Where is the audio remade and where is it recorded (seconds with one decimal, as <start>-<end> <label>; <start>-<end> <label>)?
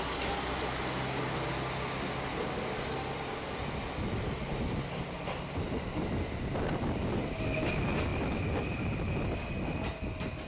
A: 0.0-10.5 recorded